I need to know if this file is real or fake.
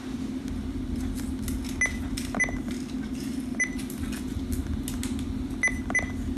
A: real